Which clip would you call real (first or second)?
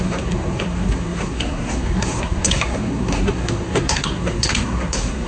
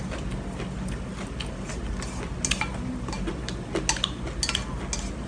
second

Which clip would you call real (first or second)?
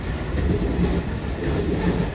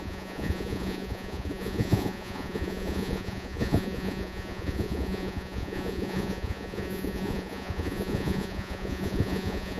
first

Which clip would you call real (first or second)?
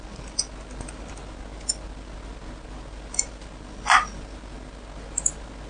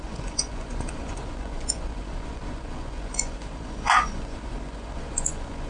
first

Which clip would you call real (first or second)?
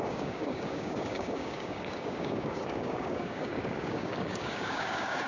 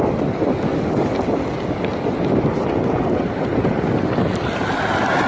second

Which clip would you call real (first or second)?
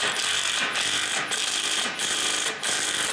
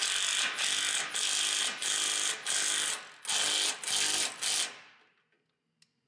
second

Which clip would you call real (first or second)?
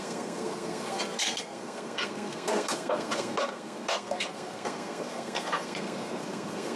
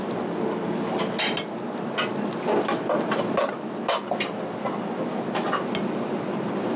second